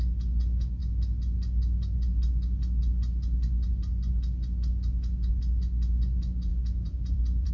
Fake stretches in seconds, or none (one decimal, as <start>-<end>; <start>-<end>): 6.5-7.5